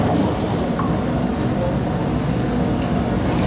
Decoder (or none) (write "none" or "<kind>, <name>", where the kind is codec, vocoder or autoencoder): none